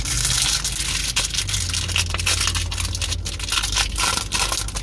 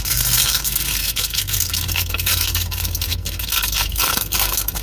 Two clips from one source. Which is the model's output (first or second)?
second